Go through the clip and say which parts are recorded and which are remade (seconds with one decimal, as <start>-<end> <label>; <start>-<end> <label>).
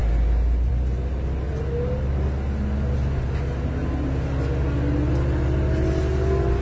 0.0-6.6 recorded